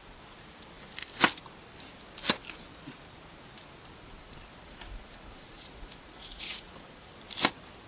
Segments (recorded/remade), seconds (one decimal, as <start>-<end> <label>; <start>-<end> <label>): 0.0-4.2 recorded; 4.2-7.1 remade; 7.1-7.9 recorded